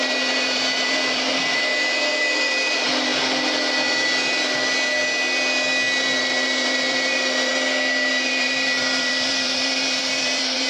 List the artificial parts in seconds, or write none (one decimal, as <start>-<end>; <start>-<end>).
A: 0.0-3.1; 6.2-7.5; 8.1-10.7